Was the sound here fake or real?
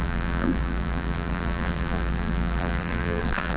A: fake